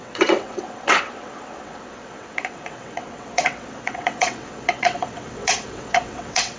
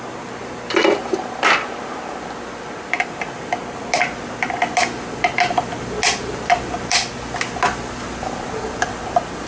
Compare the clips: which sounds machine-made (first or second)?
first